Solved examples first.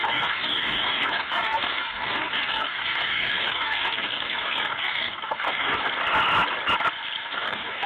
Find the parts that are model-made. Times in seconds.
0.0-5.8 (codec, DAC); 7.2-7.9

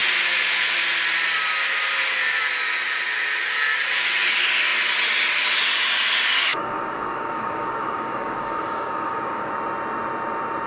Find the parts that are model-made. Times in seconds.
6.5-9.5 (codec, DAC)

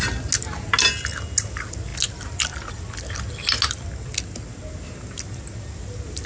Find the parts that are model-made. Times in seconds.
none

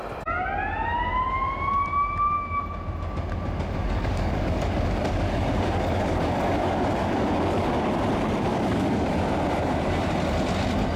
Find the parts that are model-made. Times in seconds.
3.8-7.9 (codec, DAC); 8.5-9.1

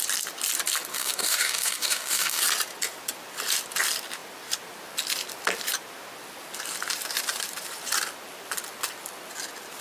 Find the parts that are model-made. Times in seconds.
0.9-2.4 (codec, DAC)

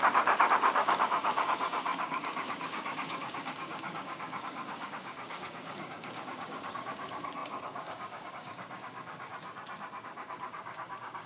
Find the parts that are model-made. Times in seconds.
0.0-9.3 (codec, DAC); 10.0-11.3